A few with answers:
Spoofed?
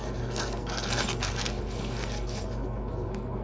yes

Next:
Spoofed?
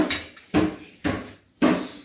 no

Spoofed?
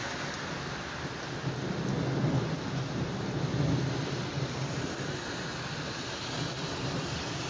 no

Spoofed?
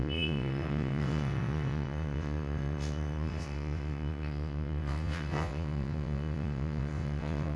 yes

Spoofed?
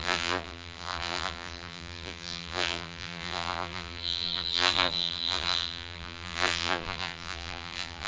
yes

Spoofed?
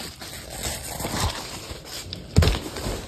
no